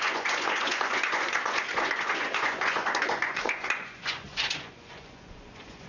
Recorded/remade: remade